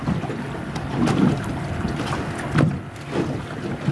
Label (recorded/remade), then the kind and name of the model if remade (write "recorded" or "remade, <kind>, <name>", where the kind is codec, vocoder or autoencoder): recorded